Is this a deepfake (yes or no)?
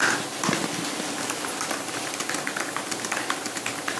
no